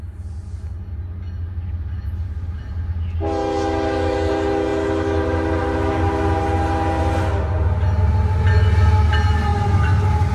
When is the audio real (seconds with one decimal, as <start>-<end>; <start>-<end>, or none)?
0.0-10.3

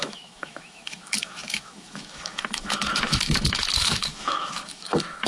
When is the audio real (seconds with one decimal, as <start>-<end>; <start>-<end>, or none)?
none

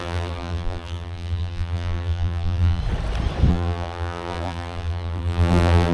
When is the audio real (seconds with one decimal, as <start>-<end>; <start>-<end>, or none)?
2.8-3.5

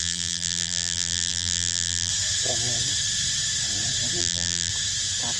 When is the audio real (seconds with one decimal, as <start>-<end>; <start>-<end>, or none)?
2.1-4.2; 4.7-5.4

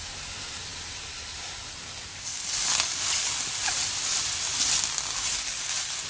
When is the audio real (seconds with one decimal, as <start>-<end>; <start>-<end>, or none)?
0.0-6.1

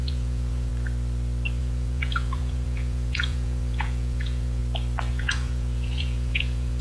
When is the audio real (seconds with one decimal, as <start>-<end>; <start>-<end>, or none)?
0.7-1.6; 4.6-5.1

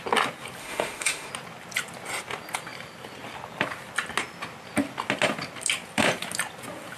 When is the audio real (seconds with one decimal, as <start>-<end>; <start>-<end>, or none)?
0.0-0.6; 1.3-7.0